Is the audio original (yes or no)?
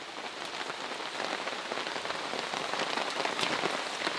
yes